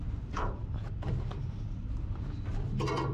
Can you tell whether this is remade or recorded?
recorded